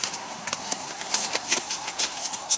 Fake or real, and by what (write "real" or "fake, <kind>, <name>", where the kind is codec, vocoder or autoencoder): fake, codec, SNAC